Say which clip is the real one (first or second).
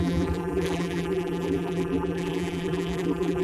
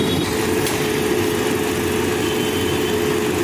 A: second